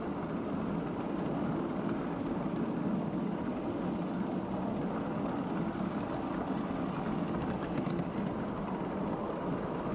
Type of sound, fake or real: real